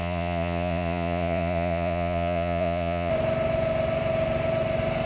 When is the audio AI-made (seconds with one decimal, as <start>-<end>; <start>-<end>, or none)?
0.0-3.1